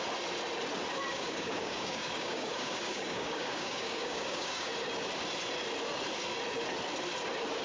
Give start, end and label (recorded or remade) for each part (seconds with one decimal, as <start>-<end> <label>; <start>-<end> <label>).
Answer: 0.0-1.1 recorded; 1.1-4.7 remade; 4.7-7.6 recorded

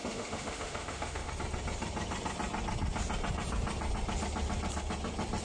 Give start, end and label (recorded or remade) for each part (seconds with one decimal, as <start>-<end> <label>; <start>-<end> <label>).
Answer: 0.0-1.3 remade; 1.3-5.4 recorded